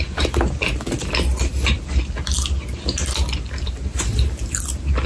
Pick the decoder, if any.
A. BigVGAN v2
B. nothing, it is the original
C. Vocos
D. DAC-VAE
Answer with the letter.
B